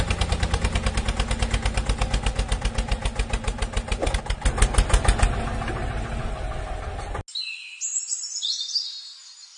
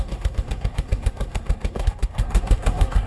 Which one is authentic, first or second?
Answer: first